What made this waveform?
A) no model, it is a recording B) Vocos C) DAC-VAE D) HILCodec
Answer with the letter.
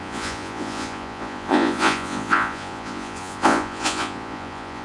B